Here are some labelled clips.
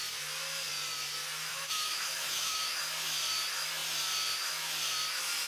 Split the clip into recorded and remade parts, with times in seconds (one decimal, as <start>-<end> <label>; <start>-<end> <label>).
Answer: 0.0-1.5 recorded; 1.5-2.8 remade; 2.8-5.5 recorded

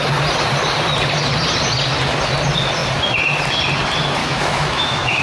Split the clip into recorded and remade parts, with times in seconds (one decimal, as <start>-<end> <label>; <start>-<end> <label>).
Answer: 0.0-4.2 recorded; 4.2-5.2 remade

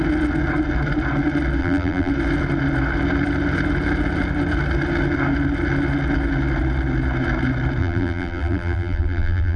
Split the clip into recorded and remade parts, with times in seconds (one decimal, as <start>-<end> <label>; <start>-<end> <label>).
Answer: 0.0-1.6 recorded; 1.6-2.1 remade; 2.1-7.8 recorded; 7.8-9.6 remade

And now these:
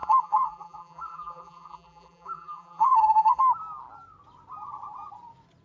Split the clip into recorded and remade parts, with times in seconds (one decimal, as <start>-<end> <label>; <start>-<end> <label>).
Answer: 0.0-3.4 remade; 3.4-5.6 recorded

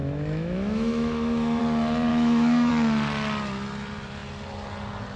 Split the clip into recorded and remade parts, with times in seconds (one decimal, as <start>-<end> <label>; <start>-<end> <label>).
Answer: 0.0-1.6 remade; 1.6-2.1 recorded; 2.1-2.7 remade; 2.7-5.2 recorded